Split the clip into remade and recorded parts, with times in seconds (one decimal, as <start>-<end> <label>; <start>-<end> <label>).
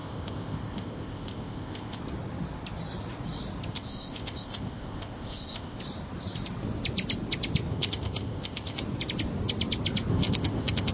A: 0.0-2.0 remade; 2.0-3.7 recorded; 3.7-5.8 remade; 5.8-7.7 recorded; 7.7-8.8 remade; 8.8-10.1 recorded; 10.1-10.9 remade